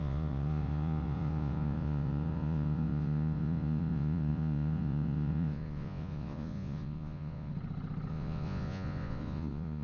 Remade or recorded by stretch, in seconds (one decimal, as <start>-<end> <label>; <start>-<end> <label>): 0.0-7.5 remade; 7.5-8.1 recorded; 8.1-9.8 remade